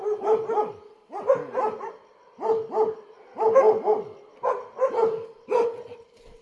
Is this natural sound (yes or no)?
yes